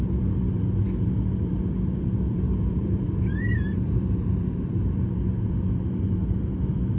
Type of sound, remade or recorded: remade